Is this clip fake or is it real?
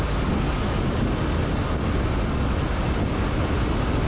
real